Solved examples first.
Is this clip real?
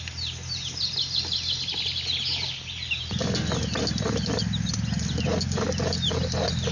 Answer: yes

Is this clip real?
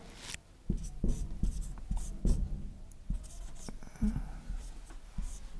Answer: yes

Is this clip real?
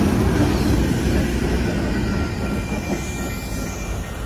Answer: yes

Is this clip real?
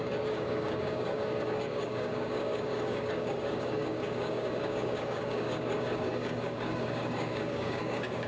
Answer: no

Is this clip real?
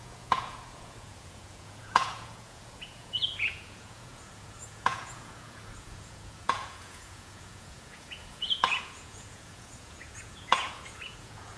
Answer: no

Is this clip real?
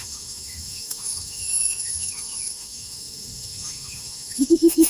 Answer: no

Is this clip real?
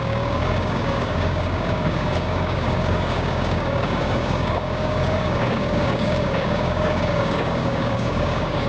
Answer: no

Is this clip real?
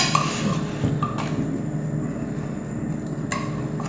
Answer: yes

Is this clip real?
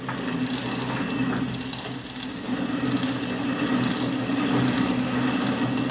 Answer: yes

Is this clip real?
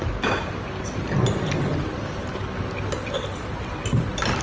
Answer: yes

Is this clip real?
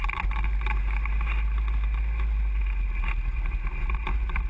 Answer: yes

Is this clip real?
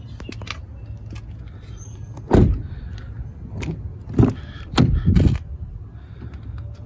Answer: yes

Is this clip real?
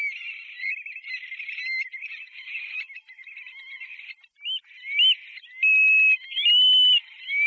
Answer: yes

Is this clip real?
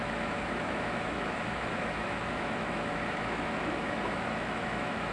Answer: no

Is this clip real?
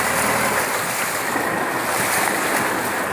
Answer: yes